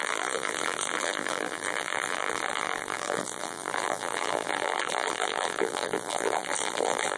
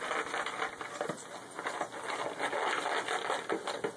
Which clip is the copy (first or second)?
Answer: first